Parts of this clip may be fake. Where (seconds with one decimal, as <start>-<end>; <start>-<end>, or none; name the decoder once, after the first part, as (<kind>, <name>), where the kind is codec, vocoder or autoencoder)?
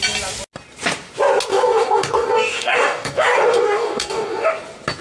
1.5-4.5 (codec, DAC)